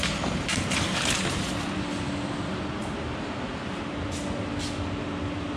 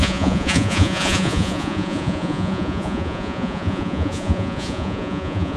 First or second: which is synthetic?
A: second